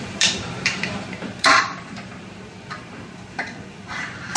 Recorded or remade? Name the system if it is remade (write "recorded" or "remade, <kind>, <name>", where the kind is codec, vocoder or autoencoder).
remade, vocoder, BigVGAN v2